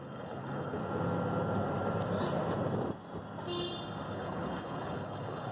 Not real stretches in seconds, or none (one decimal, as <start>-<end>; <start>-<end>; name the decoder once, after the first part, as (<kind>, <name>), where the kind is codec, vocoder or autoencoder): 0.0-0.8 (codec, HILCodec); 4.1-5.5